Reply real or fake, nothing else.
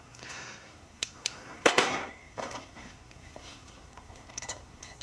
fake